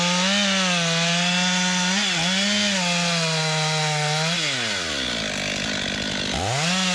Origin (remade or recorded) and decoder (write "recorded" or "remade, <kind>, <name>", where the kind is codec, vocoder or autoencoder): recorded